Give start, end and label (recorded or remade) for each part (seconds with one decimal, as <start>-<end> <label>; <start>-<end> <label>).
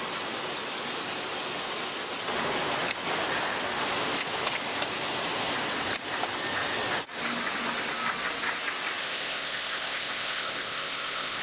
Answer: 0.0-9.0 recorded; 9.0-11.4 remade